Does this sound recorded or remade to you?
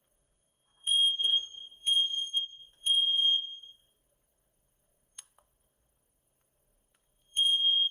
remade